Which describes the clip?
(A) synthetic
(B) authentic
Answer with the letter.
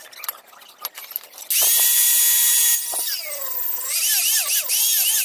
B